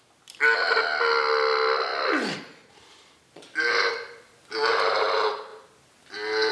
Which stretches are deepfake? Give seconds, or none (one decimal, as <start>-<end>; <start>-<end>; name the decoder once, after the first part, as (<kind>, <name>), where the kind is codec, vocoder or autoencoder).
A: none